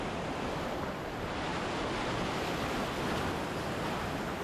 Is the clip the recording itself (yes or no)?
yes